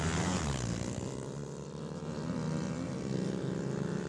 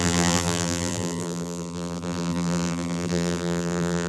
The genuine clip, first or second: first